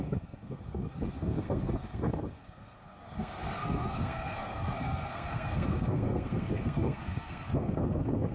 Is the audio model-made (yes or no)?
yes